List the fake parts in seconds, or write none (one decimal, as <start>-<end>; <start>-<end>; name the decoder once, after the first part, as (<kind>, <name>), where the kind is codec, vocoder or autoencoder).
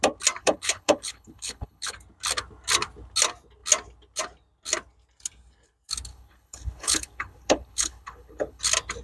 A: 0.4-1.9 (codec, HILCodec); 6.1-8.6